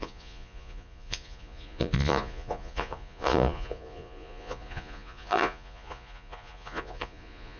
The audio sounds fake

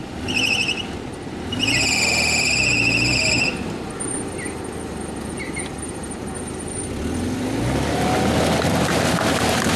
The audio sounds real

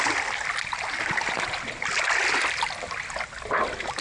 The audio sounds real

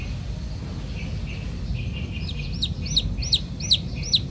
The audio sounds real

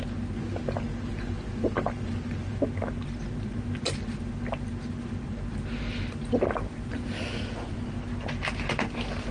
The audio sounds real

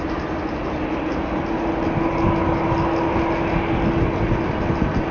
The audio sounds real